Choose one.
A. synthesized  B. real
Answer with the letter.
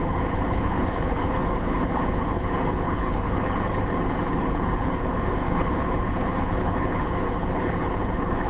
A